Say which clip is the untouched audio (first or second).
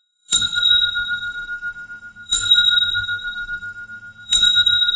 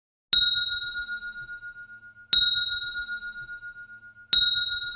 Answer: second